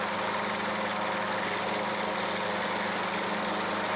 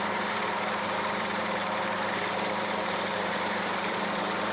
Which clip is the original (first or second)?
first